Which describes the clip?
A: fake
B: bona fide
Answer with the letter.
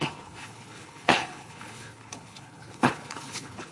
A